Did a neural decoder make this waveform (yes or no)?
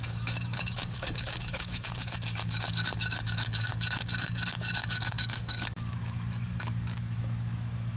yes